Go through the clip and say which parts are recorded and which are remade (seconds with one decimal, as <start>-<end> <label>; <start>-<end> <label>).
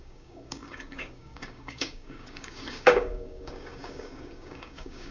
0.0-5.1 remade